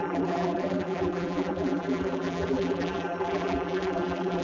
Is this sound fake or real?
fake